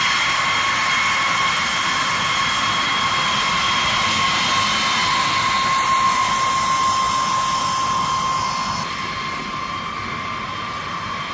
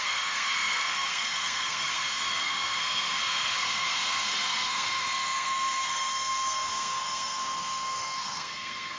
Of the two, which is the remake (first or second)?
second